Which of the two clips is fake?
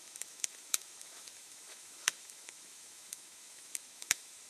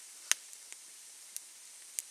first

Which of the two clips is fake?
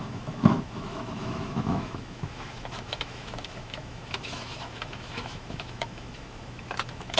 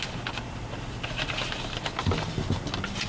first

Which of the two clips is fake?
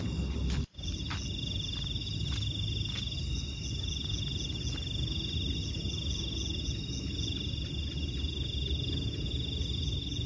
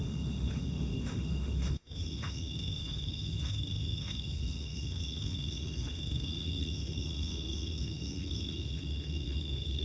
second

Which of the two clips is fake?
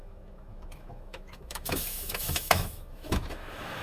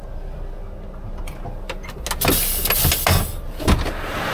first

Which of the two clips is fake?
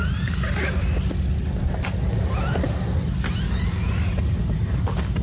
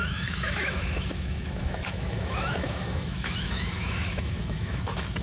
second